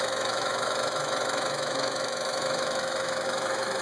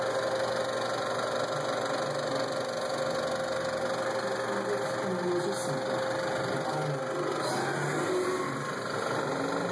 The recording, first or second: second